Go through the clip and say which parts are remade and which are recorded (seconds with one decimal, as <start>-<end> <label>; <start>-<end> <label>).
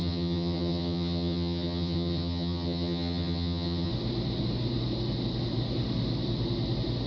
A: 0.0-3.9 remade; 3.9-7.1 recorded